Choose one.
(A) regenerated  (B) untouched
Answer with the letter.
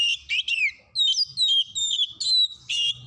B